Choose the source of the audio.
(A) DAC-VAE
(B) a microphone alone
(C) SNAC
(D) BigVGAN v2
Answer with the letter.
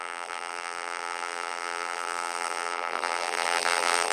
D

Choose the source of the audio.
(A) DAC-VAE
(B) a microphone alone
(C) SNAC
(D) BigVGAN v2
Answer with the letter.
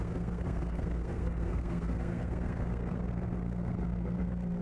C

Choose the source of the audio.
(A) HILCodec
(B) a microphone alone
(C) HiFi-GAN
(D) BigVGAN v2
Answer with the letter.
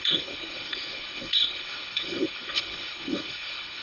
A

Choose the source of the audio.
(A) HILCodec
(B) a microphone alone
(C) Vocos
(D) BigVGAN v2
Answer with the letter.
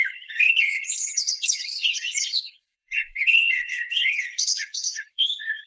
A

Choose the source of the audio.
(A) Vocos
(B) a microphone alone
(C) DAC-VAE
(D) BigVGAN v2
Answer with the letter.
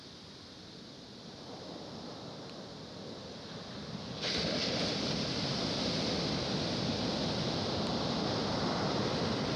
B